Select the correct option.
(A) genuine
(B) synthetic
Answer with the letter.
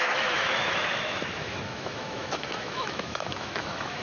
B